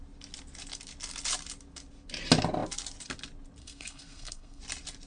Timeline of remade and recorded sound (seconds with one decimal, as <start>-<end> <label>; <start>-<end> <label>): 0.0-3.6 recorded; 3.6-4.6 remade; 4.6-5.1 recorded